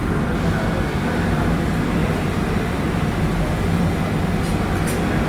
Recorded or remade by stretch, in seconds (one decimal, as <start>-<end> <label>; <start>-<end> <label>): 0.0-2.0 recorded; 2.0-4.1 remade; 4.1-5.3 recorded